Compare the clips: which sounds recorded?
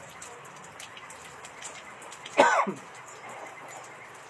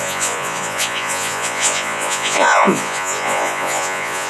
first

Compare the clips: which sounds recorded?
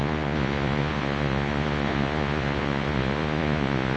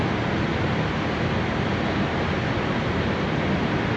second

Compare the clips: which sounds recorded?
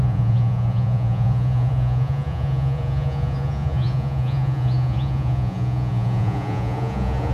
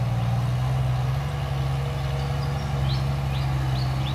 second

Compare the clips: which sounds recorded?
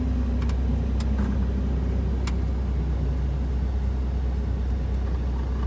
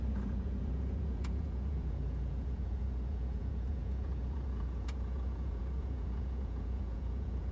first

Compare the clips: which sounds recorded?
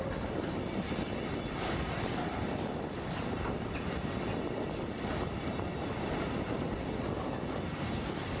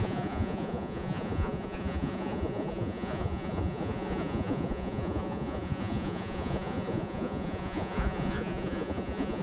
first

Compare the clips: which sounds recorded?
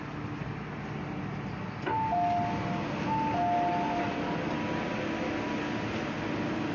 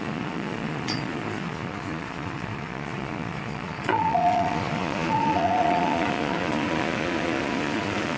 first